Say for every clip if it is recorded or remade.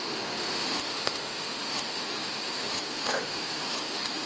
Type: remade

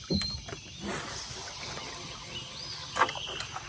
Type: recorded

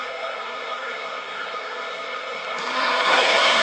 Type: remade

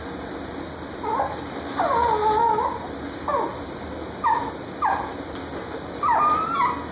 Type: recorded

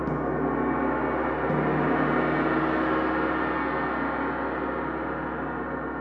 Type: recorded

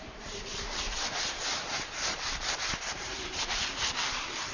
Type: remade